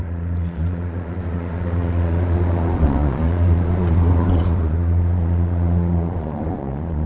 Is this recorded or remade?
remade